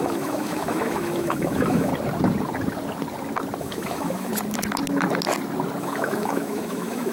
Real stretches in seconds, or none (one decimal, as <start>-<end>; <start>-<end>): 1.9-3.6; 4.3-5.8